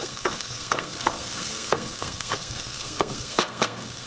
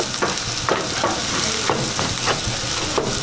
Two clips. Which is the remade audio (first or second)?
first